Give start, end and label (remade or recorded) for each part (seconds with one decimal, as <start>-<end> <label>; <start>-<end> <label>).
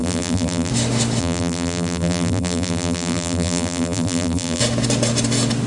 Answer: 0.0-0.7 remade; 0.7-1.2 recorded; 1.2-4.6 remade; 4.6-5.7 recorded